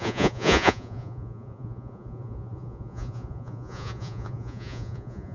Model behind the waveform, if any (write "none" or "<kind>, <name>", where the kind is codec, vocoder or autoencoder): vocoder, Vocos